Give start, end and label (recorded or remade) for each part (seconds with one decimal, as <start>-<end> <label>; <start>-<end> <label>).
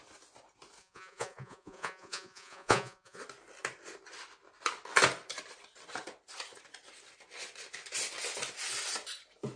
0.0-0.8 recorded; 0.8-3.2 remade; 3.2-9.6 recorded